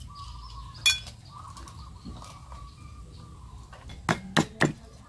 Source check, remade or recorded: recorded